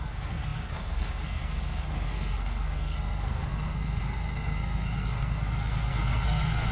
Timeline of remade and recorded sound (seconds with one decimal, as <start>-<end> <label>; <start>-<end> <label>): 0.0-6.7 remade